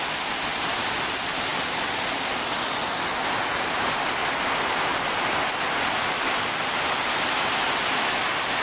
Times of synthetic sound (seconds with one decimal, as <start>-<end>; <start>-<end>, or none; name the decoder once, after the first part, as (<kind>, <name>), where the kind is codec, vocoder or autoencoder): none